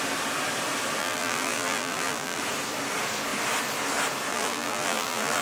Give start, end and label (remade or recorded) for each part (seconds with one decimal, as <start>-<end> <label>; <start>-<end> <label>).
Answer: 0.0-1.0 recorded; 1.0-2.4 remade; 2.4-4.3 recorded; 4.3-5.4 remade